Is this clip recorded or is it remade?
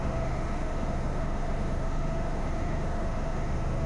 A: remade